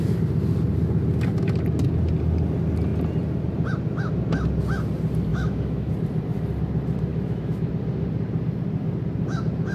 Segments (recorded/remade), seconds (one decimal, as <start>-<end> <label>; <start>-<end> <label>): 0.0-5.3 recorded; 5.3-5.9 remade; 5.9-7.1 recorded; 7.1-7.7 remade; 7.7-9.7 recorded